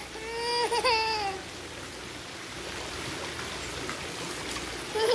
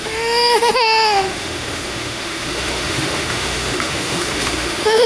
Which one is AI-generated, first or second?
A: second